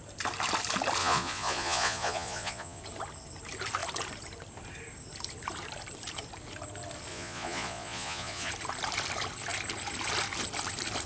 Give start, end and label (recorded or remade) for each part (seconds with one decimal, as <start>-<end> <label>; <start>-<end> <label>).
0.0-1.0 recorded; 1.0-2.8 remade; 2.8-7.1 recorded; 7.1-8.5 remade; 8.5-11.1 recorded